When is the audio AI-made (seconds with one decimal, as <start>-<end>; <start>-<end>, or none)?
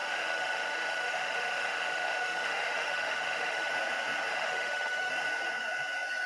0.0-3.7; 4.3-5.1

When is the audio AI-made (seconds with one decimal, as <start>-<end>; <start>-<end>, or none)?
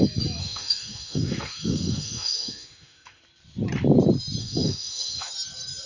0.4-3.2; 4.4-5.3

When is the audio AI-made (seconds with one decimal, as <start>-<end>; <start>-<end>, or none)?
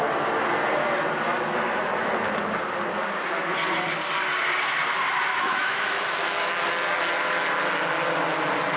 5.3-6.4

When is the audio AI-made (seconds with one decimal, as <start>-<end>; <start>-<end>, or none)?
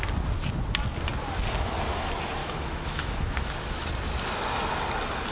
2.4-3.9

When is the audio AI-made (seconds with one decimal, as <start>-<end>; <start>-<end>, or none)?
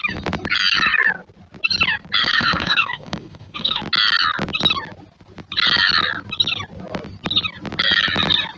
2.2-3.8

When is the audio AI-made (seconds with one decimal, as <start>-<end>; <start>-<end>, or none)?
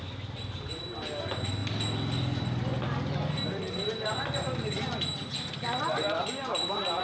none